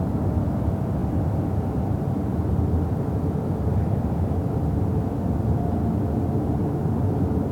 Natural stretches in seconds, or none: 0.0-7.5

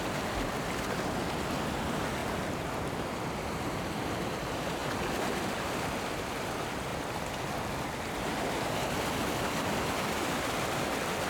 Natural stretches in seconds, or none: 0.0-2.2; 4.0-4.8; 6.1-6.9; 8.1-11.3

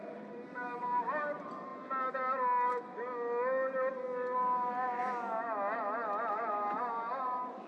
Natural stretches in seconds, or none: 1.7-6.3

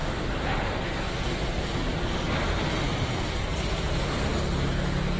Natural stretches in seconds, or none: 4.3-5.2

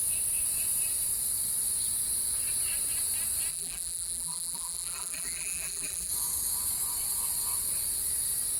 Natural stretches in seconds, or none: 0.0-3.5; 6.1-8.6